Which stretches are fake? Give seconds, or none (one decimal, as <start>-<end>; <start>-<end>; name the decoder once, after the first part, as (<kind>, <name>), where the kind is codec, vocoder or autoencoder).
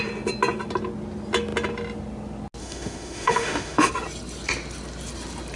2.6-3.9 (autoencoder, DAC-VAE)